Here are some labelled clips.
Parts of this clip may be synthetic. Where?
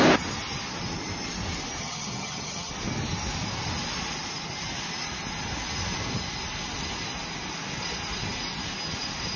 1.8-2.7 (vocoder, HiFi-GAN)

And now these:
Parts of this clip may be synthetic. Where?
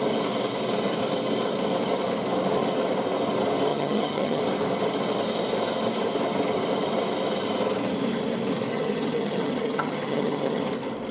3.7-4.4 (vocoder, HiFi-GAN); 8.7-10.6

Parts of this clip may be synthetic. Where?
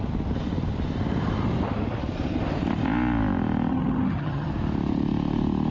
3.7-4.5 (vocoder, HiFi-GAN)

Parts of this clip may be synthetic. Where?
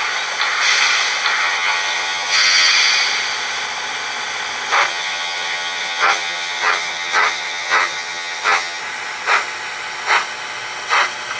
1.4-2.7 (vocoder, HiFi-GAN); 4.9-8.8